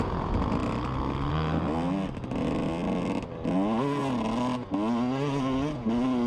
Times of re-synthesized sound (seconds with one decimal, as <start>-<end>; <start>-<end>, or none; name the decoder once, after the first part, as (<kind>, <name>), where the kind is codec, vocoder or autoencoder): 0.6-1.3 (vocoder, BigVGAN v2)